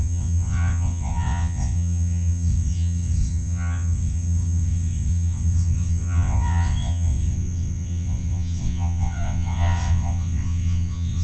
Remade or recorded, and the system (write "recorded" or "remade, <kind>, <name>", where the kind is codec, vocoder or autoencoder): remade, vocoder, WaveNeXt